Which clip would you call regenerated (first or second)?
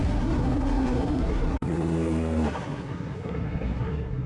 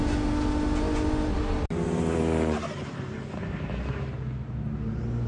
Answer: first